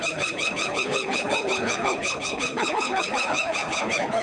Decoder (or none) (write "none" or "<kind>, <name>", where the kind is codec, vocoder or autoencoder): codec, HILCodec